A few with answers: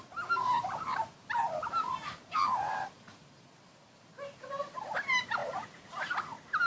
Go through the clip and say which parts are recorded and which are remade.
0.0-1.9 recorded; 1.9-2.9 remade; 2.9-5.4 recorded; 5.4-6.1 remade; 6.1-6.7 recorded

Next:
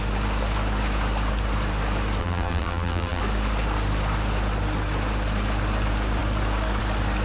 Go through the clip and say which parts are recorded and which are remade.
0.0-2.2 recorded; 2.2-3.2 remade; 3.2-7.2 recorded

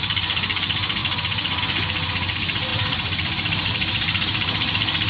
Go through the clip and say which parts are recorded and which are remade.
0.0-1.0 recorded; 1.0-1.6 remade; 1.6-2.7 recorded; 2.7-3.7 remade; 3.7-5.1 recorded

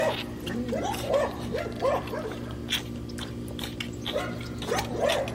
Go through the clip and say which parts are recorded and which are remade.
0.0-5.3 recorded

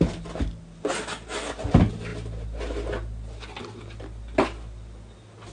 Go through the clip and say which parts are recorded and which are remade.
0.0-5.5 recorded

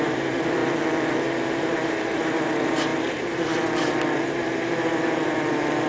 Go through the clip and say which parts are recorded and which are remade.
0.0-0.6 remade; 0.6-1.5 recorded; 1.5-5.9 remade

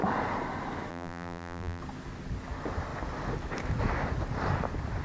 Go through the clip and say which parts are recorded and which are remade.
0.0-0.9 recorded; 0.9-1.8 remade; 1.8-5.0 recorded

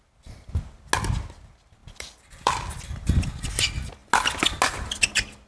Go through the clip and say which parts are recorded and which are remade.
0.0-1.8 recorded; 1.8-2.5 remade; 2.5-5.5 recorded